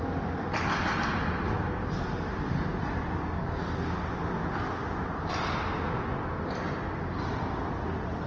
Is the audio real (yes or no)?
yes